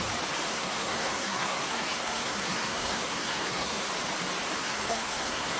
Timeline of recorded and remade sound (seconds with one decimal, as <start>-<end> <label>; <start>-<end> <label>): 0.0-0.5 recorded; 0.5-3.9 remade; 3.9-4.6 recorded; 4.6-5.6 remade